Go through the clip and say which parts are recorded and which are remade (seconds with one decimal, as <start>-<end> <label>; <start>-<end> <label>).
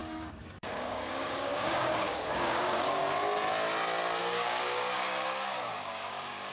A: 0.0-3.0 remade; 3.0-4.2 recorded; 4.2-6.5 remade